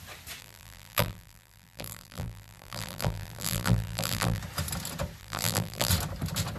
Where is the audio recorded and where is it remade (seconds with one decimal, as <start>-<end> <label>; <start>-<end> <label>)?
0.0-0.4 recorded; 0.4-4.4 remade; 4.4-5.2 recorded; 5.2-5.9 remade; 5.9-6.6 recorded